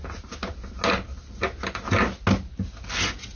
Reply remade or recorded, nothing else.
recorded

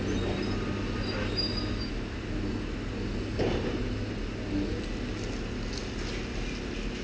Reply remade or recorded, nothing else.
recorded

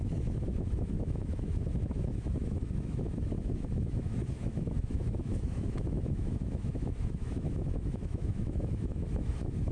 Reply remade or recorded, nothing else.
remade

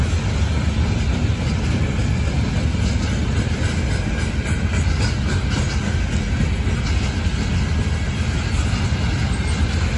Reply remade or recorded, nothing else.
recorded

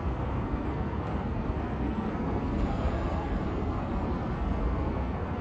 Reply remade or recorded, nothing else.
remade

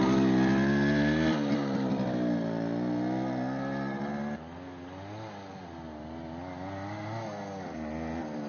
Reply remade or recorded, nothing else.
recorded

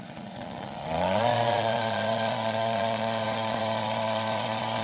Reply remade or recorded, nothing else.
remade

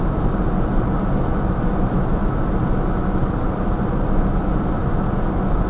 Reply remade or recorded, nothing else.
recorded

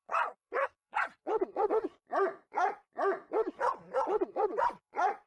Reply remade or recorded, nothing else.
remade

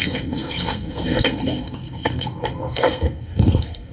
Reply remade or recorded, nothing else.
remade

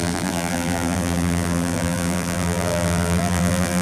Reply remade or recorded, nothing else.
remade